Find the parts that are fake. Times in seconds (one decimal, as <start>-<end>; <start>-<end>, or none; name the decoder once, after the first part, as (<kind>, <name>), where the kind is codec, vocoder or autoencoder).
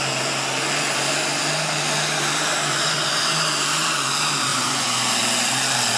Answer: 2.7-3.3 (vocoder, Vocos); 4.5-5.0